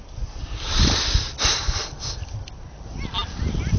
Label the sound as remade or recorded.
recorded